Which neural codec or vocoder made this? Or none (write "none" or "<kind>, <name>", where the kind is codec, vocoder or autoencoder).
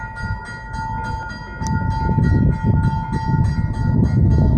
none